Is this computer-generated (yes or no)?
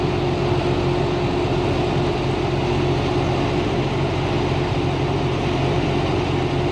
no